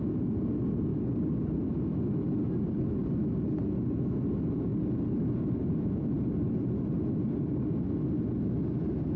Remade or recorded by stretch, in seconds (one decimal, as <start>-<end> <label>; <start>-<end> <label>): 0.0-0.9 recorded; 0.9-1.5 remade; 1.5-9.2 recorded